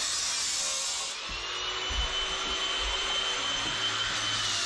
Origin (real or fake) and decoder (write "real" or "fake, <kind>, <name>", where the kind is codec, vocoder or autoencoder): real